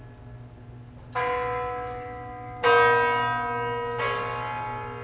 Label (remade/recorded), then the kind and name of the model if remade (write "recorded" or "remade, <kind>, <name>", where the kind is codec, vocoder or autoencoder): recorded